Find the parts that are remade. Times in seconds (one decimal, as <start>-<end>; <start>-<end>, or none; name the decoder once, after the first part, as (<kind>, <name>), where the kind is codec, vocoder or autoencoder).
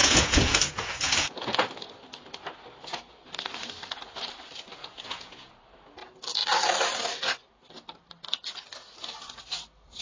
0.0-1.9 (vocoder, Vocos); 4.8-5.5